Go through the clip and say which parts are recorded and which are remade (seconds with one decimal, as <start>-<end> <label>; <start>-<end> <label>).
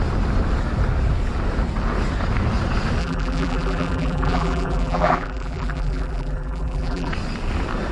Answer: 0.0-3.0 recorded; 3.0-7.1 remade; 7.1-7.9 recorded